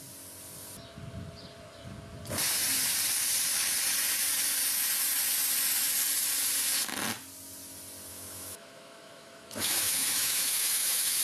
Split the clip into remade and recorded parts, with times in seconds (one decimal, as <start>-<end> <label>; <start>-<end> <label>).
0.0-8.1 recorded; 8.1-11.2 remade